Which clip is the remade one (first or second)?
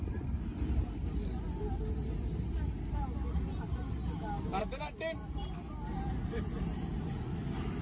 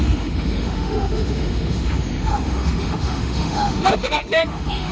second